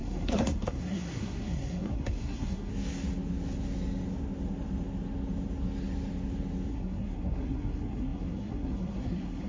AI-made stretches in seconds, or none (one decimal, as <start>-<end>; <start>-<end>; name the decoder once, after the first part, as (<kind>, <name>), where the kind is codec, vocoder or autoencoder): 0.0-2.7 (codec, SNAC); 6.7-9.5